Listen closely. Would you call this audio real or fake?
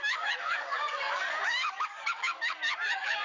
fake